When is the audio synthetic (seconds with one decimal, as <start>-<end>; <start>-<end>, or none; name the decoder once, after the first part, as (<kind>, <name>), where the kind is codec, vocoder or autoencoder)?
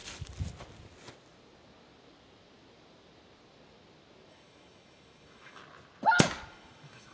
4.3-5.6 (autoencoder, DAC-VAE); 6.5-7.1